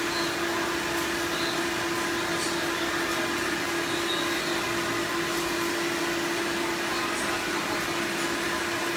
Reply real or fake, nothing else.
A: real